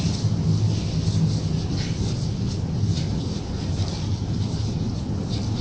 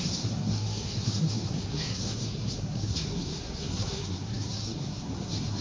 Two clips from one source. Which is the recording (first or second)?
first